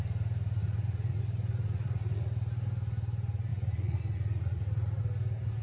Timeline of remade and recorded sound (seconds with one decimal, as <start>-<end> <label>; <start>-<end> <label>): 0.0-0.6 recorded; 0.6-1.2 remade; 1.2-1.6 recorded; 1.6-2.3 remade; 2.3-3.5 recorded; 3.5-5.0 remade; 5.0-5.6 recorded